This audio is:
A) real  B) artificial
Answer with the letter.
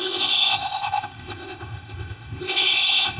B